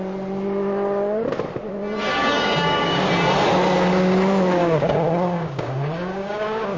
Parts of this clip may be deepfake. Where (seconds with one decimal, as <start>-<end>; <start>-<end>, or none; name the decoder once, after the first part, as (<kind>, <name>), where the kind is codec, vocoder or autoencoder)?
2.1-3.1 (codec, DAC); 4.6-6.8

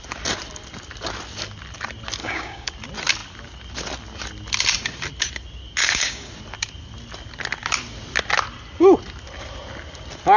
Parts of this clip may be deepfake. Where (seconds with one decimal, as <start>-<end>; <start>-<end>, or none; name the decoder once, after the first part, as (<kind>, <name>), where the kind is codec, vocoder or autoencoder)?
2.2-2.7 (codec, DAC); 5.8-6.3

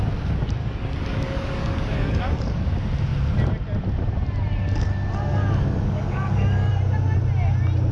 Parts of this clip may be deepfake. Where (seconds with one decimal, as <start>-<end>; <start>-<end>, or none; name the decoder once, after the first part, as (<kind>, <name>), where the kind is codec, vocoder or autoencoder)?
0.6-2.6 (codec, DAC); 5.3-6.7

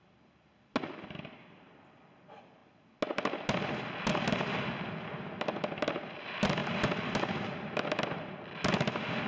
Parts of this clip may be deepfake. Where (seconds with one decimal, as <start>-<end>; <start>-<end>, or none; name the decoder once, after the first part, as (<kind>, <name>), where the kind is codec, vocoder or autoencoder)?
none

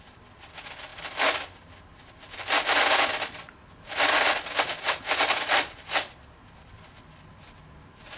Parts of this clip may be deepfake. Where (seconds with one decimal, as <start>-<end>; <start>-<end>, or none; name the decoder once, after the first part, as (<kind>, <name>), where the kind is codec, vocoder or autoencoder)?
none